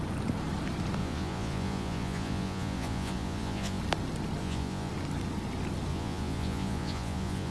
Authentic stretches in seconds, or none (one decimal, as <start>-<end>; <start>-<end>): 0.0-1.0; 3.8-4.4; 4.9-5.9